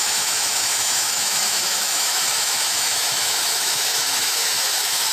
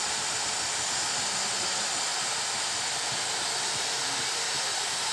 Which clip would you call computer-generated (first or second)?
first